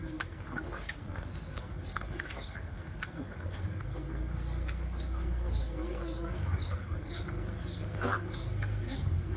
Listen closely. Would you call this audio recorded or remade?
remade